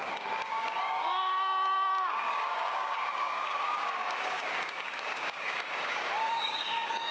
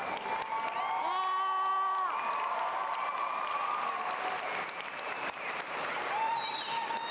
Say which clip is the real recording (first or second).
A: second